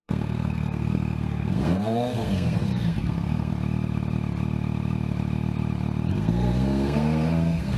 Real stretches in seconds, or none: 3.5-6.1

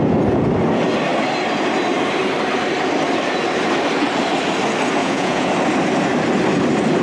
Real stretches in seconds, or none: 0.0-5.0; 5.5-7.0

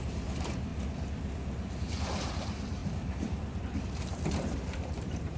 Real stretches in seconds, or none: 0.7-2.0

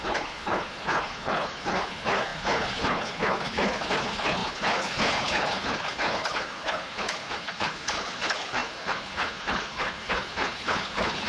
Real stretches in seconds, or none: none

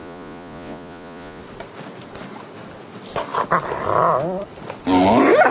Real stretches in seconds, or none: 1.4-5.5

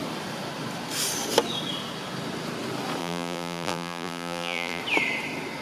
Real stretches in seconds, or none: 0.0-3.0; 4.8-5.6

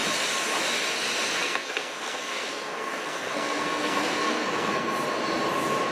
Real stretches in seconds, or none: 0.0-1.4; 4.9-5.9

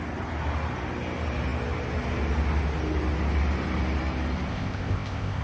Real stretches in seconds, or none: 0.0-4.5